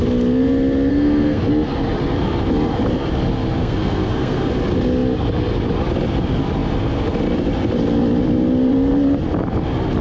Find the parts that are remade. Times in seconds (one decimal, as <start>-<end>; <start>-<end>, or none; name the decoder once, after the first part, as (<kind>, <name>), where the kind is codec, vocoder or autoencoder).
0.9-1.4 (codec, SNAC); 3.6-4.5